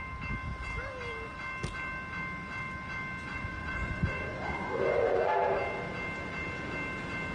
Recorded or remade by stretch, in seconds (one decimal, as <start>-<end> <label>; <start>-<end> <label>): 0.0-3.3 recorded; 3.3-5.3 remade; 5.3-7.3 recorded